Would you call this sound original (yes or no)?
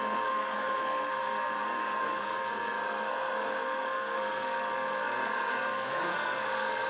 no